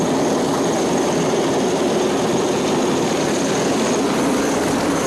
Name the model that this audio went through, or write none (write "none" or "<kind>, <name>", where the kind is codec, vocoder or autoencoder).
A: none